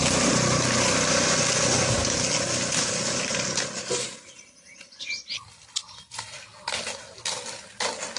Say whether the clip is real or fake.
real